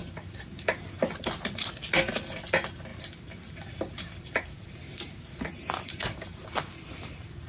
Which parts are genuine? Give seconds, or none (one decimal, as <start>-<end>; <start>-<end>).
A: 1.7-2.9